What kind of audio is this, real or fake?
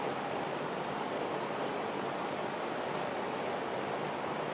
real